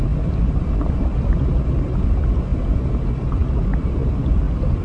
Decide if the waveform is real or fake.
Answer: real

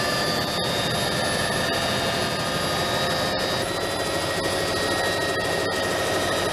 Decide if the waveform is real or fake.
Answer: real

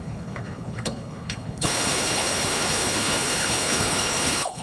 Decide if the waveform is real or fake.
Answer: fake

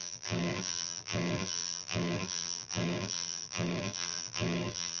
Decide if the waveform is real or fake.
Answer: fake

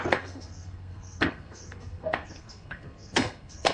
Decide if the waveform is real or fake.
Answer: fake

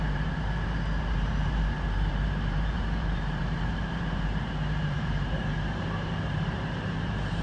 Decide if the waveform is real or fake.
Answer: fake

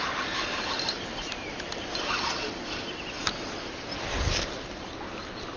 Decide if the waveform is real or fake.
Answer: real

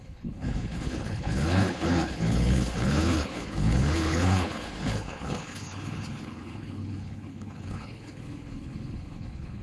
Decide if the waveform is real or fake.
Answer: fake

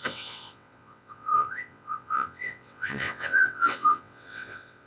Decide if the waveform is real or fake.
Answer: fake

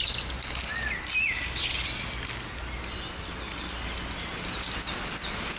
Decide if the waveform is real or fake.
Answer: real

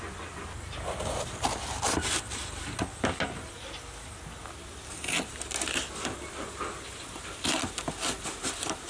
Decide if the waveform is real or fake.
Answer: real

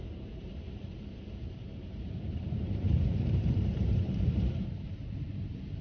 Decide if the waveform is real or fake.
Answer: fake